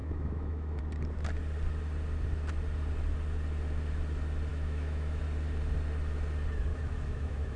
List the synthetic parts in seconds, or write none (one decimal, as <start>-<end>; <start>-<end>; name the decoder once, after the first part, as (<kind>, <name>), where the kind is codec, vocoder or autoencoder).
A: 0.0-0.8 (autoencoder, DAC-VAE); 4.5-5.2; 6.7-7.6